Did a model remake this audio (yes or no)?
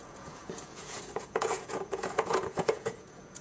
yes